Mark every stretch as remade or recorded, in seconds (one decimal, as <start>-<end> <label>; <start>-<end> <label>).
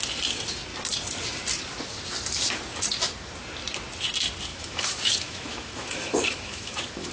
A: 0.0-4.5 recorded; 4.5-7.1 remade